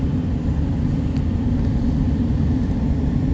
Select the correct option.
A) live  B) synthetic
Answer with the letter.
A